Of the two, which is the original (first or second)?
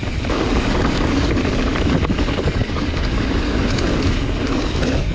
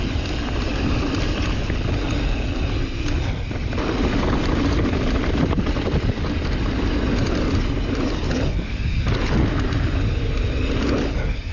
second